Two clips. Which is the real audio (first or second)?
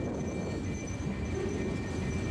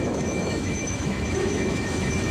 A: first